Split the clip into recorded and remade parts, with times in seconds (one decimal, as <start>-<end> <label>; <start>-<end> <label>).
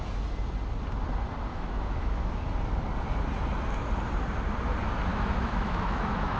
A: 0.0-1.5 recorded; 1.5-2.2 remade; 2.2-5.1 recorded; 5.1-6.4 remade